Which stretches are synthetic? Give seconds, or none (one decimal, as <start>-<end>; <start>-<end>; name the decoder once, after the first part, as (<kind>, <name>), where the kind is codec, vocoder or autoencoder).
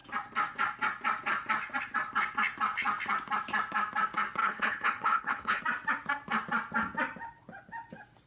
4.4-5.6 (codec, HILCodec)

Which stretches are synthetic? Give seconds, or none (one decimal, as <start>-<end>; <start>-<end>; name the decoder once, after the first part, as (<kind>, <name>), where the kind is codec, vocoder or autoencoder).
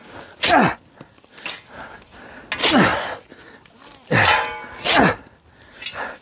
none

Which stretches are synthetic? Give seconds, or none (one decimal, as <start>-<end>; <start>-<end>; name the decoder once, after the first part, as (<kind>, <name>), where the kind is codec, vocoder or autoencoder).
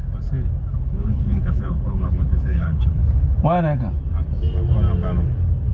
0.7-3.0 (codec, HILCodec)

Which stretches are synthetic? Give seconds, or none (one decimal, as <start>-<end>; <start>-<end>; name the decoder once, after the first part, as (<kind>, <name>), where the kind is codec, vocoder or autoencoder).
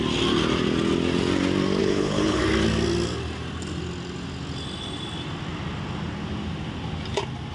1.8-2.4 (codec, HILCodec)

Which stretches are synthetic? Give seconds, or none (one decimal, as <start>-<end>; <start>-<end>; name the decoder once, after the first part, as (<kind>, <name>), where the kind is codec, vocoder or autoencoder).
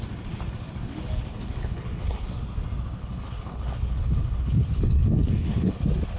1.3-2.4 (codec, HILCodec); 3.0-5.8